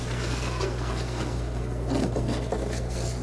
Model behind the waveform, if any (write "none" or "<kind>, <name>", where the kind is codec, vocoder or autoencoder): codec, SNAC